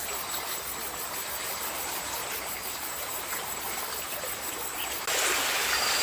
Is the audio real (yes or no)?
yes